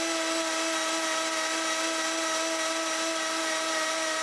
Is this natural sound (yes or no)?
yes